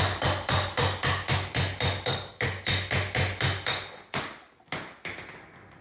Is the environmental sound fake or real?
real